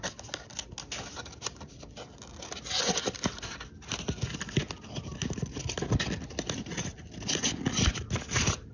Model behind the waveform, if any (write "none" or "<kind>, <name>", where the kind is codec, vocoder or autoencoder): none